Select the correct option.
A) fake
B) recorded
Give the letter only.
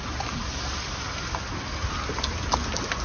B